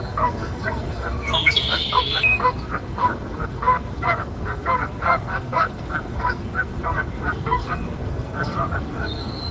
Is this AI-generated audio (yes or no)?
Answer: yes